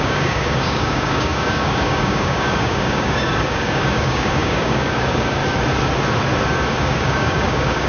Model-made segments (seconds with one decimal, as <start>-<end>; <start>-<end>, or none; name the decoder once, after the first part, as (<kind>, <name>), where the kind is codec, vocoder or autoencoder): 0.0-5.4 (codec, DAC); 6.8-7.9